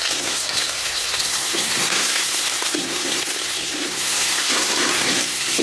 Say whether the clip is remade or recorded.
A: remade